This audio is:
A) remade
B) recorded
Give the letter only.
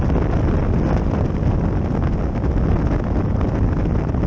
B